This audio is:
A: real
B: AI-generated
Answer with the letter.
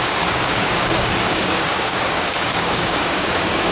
B